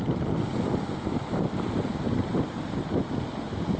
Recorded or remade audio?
recorded